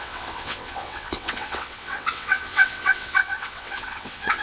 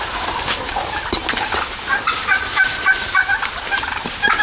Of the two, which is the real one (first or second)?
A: second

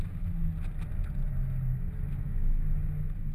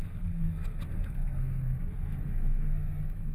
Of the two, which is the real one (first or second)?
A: first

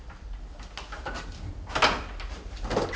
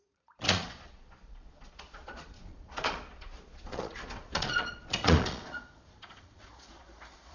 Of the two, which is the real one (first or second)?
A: first